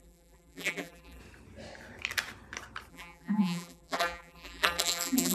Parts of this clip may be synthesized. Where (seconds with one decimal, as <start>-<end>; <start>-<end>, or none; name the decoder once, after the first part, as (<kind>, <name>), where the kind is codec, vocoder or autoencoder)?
0.0-1.2 (vocoder, BigVGAN v2); 2.9-5.3